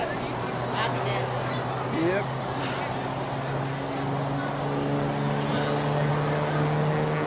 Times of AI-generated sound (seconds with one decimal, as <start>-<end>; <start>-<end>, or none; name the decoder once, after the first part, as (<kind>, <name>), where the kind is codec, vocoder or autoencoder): none